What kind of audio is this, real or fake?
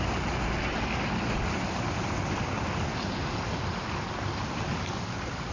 real